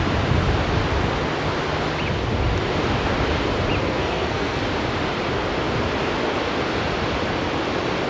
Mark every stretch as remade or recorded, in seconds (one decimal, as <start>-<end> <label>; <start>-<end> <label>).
0.0-3.8 recorded; 3.8-4.6 remade; 4.6-8.1 recorded